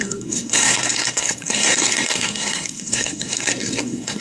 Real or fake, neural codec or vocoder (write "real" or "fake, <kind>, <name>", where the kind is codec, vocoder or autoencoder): fake, codec, SNAC